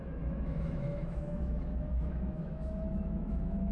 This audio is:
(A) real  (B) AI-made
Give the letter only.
B